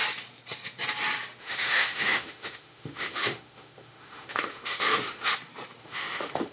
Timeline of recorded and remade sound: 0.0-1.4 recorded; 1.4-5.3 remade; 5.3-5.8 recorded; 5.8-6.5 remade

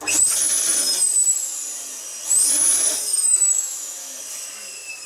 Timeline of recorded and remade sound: 0.0-3.1 recorded; 3.1-4.2 remade; 4.2-5.1 recorded

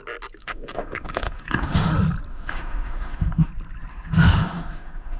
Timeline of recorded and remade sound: 0.0-0.4 recorded; 0.4-1.9 remade; 1.9-2.3 recorded; 2.3-3.5 remade; 3.5-3.9 recorded; 3.9-5.2 remade

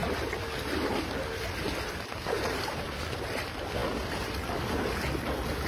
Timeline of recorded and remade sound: 0.0-5.7 recorded

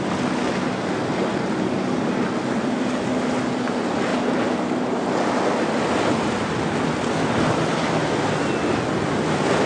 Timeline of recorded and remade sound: 0.0-9.7 recorded

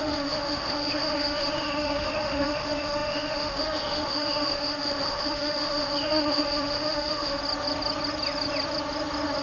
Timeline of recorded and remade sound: 0.0-7.4 remade; 7.4-9.4 recorded

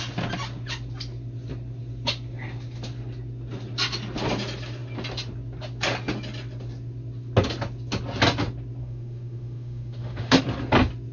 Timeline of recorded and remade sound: 0.0-8.8 recorded; 8.8-10.4 remade; 10.4-11.1 recorded